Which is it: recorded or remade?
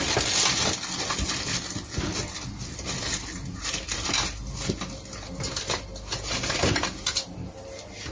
recorded